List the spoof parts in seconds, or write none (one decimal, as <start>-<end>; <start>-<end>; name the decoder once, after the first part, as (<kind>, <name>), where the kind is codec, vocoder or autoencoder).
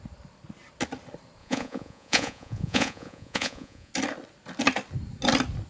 1.4-3.9 (vocoder, Vocos)